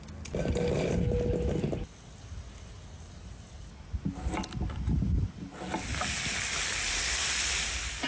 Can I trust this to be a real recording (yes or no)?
yes